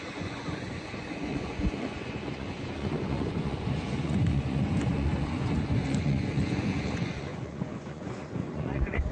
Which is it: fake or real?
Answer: fake